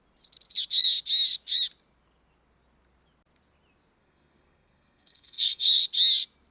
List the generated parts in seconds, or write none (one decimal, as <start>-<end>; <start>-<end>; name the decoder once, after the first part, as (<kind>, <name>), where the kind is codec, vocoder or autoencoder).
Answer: 4.0-5.8 (codec, SNAC)